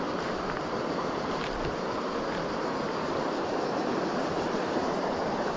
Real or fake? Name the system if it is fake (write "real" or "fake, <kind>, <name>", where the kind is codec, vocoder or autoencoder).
real